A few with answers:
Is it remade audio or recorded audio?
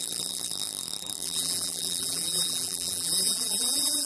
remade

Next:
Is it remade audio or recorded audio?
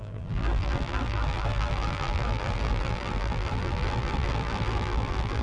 remade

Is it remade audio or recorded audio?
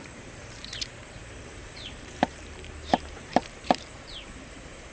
remade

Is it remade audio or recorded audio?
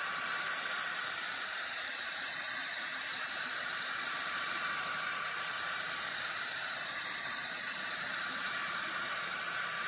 remade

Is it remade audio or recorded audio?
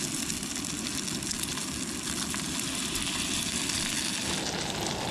recorded